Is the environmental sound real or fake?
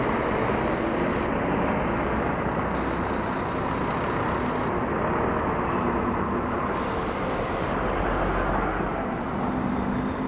real